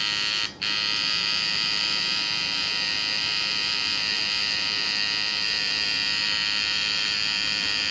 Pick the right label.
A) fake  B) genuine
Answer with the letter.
A